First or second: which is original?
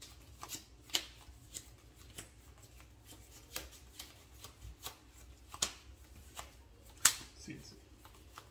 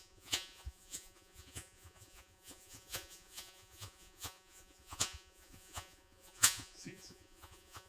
first